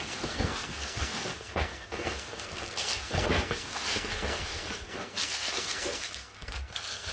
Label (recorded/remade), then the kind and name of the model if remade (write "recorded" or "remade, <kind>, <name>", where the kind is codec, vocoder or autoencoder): remade, codec, SNAC